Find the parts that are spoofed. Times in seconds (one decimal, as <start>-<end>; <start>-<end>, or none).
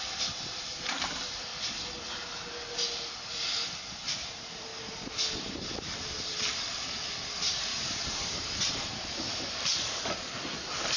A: 0.0-1.5; 3.3-4.7; 6.5-7.7; 8.2-11.0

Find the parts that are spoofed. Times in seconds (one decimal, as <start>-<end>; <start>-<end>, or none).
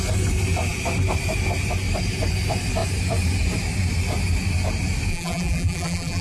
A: 5.1-6.2